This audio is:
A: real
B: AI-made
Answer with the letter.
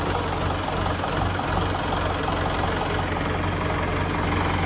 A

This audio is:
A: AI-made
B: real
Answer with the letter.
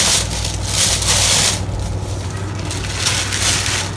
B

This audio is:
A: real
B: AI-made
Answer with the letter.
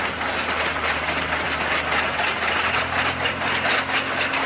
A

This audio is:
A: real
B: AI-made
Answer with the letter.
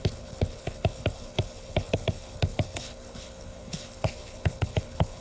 B